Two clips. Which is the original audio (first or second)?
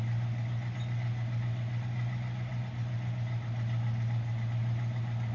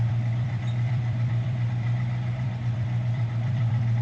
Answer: first